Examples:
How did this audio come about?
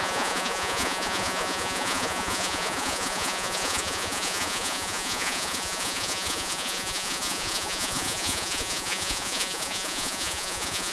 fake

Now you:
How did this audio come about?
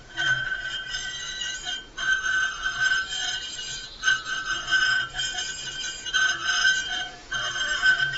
fake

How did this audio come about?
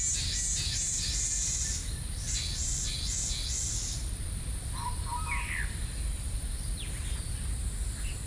real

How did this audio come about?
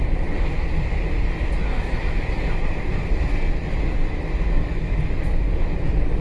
real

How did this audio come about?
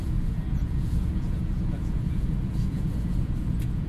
fake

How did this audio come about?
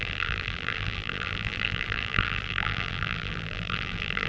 fake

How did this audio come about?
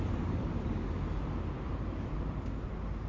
real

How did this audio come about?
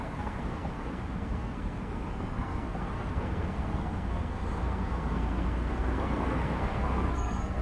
fake